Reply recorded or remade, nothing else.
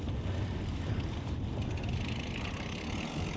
recorded